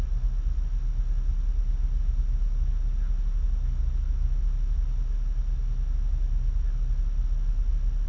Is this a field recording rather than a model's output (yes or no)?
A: yes